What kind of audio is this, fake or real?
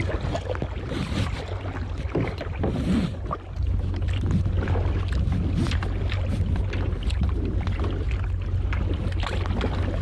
real